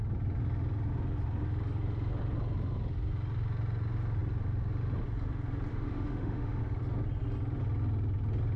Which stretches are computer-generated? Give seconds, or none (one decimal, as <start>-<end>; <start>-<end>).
5.7-6.6